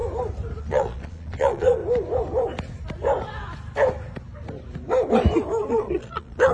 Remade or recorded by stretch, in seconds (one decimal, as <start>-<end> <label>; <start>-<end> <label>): 0.0-0.6 recorded; 0.6-1.8 remade; 1.8-5.7 recorded; 5.7-6.5 remade